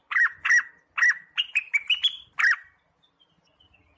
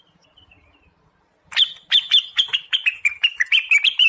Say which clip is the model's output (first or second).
second